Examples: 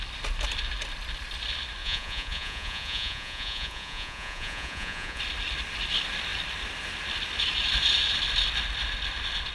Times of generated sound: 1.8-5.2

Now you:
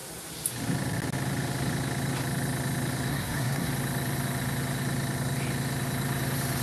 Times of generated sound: 3.1-3.7